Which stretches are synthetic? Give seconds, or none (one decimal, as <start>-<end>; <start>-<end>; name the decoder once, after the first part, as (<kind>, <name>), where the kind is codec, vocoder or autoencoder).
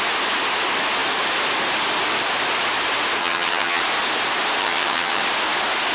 3.2-3.8 (vocoder, HiFi-GAN); 4.6-5.2